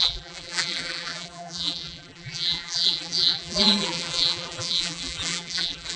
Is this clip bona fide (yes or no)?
no